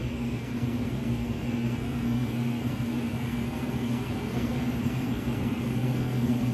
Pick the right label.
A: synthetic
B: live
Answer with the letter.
A